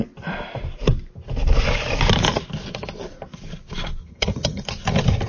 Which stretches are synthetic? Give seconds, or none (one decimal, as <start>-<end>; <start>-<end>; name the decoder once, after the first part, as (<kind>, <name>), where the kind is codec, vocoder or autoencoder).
4.0-4.6 (vocoder, HiFi-GAN)